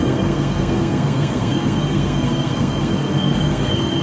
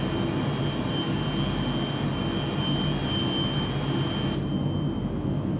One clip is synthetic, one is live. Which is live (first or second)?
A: second